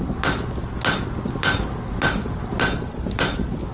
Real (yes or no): yes